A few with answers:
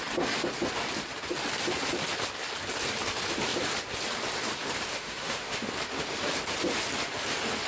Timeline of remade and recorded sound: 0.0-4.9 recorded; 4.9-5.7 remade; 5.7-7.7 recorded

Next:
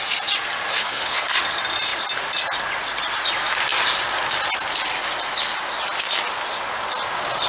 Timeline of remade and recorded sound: 0.0-0.7 recorded; 0.7-1.4 remade; 1.4-7.5 recorded

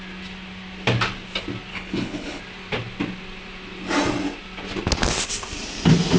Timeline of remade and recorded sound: 0.0-1.7 recorded; 1.7-2.4 remade; 2.4-6.2 recorded

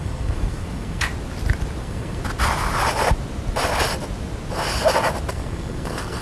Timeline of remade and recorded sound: 0.0-1.1 remade; 1.1-1.8 recorded; 1.8-2.2 remade; 2.2-5.3 recorded; 5.3-6.2 remade

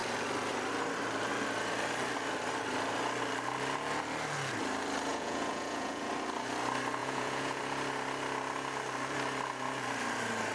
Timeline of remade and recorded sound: 0.0-5.1 recorded; 5.1-6.1 remade; 6.1-7.0 recorded; 7.0-7.6 remade; 7.6-10.5 recorded

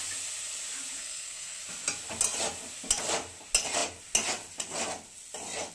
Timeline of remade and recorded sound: 0.0-1.0 recorded; 1.0-1.6 remade; 1.6-5.7 recorded

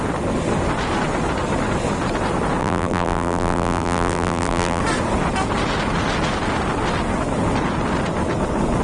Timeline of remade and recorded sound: 0.0-2.6 recorded; 2.6-4.8 remade; 4.8-8.8 recorded

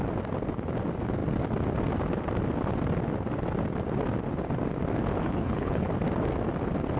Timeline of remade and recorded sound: 0.0-5.2 recorded; 5.2-5.9 remade; 5.9-7.0 recorded